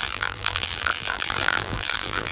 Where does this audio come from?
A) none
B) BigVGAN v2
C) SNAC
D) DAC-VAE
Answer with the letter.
B